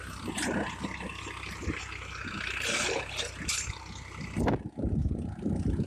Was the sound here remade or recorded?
recorded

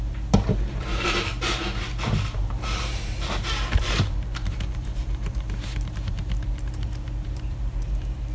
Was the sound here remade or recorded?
remade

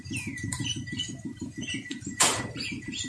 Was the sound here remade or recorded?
remade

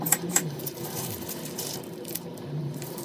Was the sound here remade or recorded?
remade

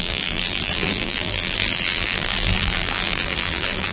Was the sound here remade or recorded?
remade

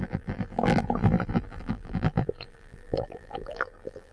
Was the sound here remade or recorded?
remade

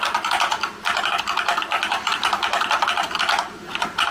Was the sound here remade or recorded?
recorded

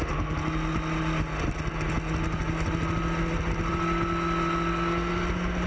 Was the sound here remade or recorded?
recorded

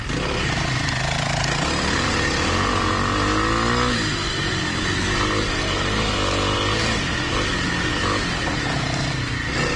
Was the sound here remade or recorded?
recorded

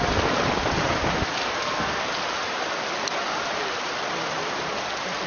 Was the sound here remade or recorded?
remade